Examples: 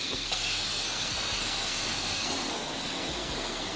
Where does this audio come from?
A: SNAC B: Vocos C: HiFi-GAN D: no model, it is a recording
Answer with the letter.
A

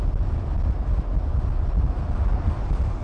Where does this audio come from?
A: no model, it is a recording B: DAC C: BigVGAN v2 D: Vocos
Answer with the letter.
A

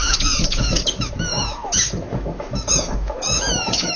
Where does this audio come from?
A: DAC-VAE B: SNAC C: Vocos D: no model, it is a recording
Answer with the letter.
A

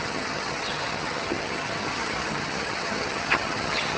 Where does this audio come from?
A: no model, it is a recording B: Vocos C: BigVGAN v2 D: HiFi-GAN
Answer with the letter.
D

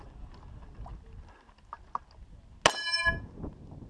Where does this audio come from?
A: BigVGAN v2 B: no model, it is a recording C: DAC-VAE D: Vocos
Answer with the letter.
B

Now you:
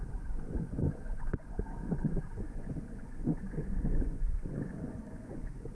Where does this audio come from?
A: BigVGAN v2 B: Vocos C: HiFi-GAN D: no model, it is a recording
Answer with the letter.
B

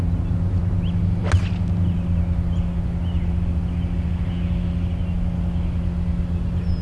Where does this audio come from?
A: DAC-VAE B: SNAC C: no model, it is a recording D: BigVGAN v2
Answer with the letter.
C